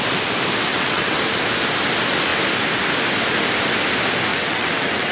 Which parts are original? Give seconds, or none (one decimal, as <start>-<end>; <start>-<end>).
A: 0.0-0.7; 1.2-4.3